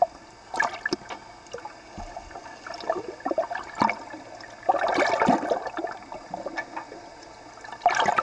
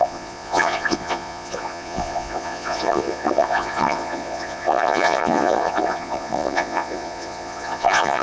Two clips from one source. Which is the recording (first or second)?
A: first